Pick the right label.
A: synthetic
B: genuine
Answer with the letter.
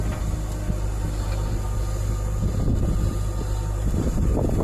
B